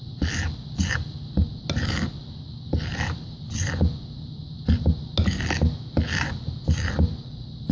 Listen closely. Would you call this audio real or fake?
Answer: real